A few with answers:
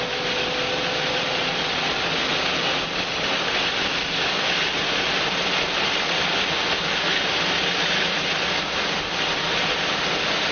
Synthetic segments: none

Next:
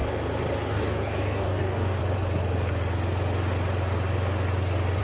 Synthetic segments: 0.7-2.0 (codec, DAC)

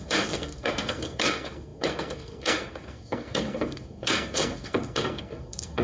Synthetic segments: 0.0-5.8 (codec, SNAC)

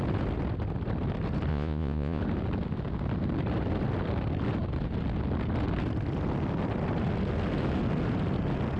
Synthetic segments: 1.5-2.2 (vocoder, Vocos)

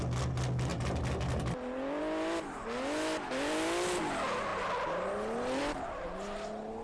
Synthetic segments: none

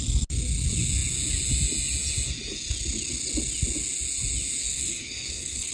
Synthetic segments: 4.6-5.7 (codec, SNAC)

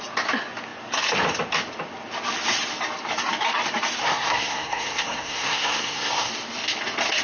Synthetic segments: 4.0-6.3 (codec, SNAC)